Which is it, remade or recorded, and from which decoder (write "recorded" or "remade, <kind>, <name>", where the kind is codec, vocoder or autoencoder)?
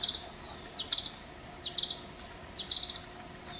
recorded